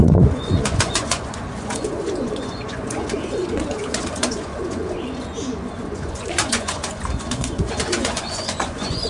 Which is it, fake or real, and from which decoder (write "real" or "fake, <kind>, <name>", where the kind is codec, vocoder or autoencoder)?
fake, vocoder, Vocos